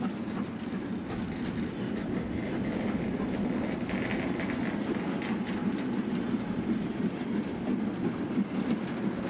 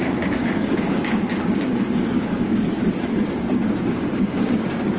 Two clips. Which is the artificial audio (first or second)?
second